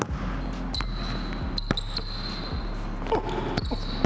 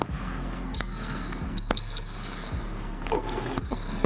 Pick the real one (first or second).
first